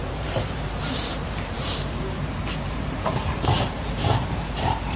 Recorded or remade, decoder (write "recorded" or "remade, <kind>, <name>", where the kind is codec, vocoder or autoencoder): remade, vocoder, BigVGAN v2